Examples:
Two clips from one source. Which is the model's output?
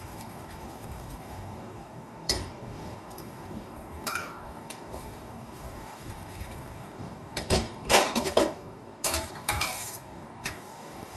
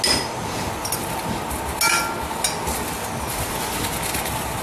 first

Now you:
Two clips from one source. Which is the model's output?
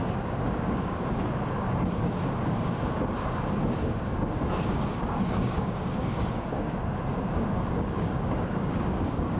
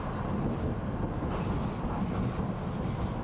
first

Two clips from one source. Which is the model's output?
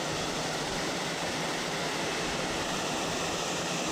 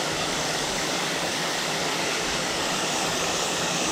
second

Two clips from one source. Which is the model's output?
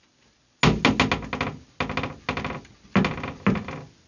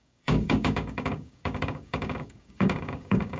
second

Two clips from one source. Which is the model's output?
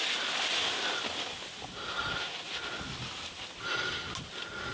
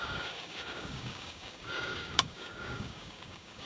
second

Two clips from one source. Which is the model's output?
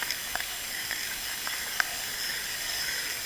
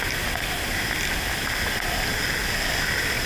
first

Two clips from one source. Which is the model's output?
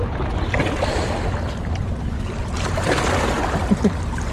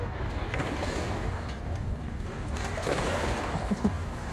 second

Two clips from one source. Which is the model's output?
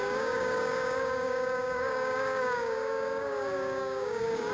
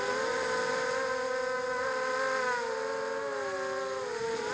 first